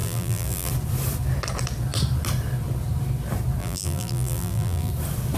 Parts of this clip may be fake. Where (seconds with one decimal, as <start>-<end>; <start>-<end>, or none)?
0.0-0.7; 3.6-4.9